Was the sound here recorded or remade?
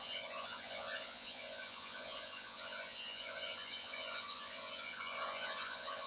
remade